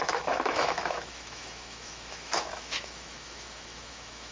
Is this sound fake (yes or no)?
yes